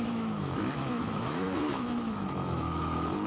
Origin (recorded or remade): remade